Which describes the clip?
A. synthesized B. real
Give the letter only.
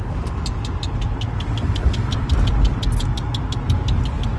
B